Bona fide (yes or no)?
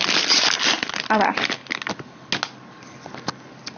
yes